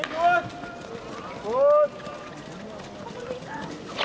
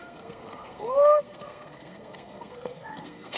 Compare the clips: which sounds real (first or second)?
first